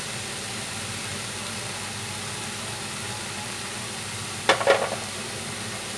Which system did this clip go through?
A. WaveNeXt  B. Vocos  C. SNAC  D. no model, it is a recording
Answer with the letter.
D